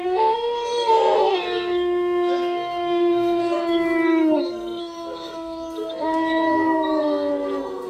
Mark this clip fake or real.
fake